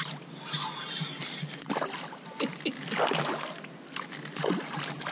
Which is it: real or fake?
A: real